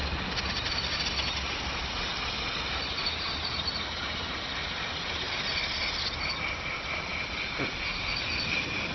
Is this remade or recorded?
recorded